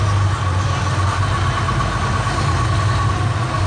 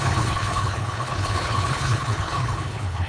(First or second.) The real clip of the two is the first